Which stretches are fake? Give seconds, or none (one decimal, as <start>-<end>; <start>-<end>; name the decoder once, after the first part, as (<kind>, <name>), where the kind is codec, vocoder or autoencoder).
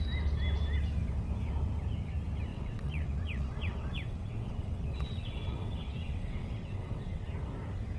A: 2.5-7.3 (vocoder, WaveNeXt)